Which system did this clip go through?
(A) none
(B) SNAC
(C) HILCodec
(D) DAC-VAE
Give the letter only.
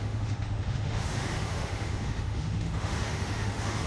D